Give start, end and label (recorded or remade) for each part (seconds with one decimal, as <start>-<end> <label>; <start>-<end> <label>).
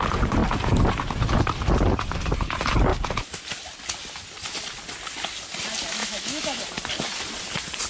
0.0-6.0 recorded; 6.0-6.6 remade; 6.6-7.9 recorded